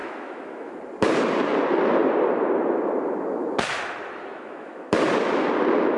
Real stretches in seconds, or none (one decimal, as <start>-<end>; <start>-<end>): 0.7-4.3; 4.9-6.0